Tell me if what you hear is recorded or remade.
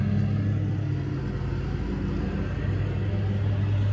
recorded